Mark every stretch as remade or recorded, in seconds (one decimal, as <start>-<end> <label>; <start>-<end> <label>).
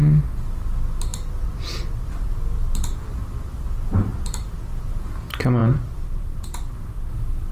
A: 0.0-1.1 recorded; 1.1-2.3 remade; 2.3-4.1 recorded; 4.1-4.9 remade; 4.9-5.6 recorded; 5.6-7.1 remade; 7.1-7.5 recorded